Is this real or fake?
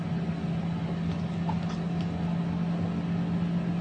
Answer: real